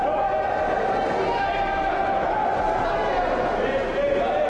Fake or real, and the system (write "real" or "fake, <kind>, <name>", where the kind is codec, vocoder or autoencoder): real